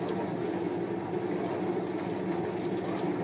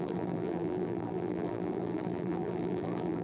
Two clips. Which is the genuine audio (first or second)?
first